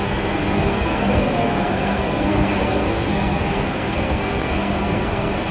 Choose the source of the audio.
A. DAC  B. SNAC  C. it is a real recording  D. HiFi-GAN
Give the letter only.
B